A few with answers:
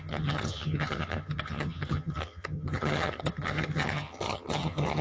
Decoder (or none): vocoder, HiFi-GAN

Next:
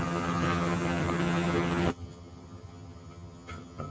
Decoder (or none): vocoder, HiFi-GAN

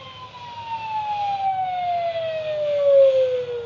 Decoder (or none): none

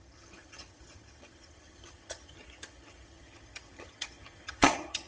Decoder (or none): vocoder, HiFi-GAN